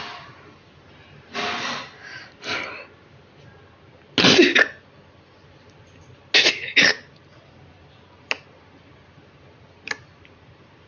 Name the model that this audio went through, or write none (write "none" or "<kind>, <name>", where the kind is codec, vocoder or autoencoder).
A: none